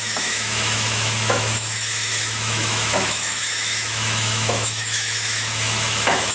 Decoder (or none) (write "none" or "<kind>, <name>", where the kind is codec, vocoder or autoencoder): autoencoder, DAC-VAE